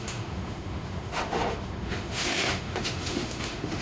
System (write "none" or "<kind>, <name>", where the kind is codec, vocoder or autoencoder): autoencoder, DAC-VAE